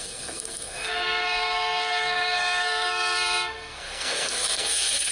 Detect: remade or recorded remade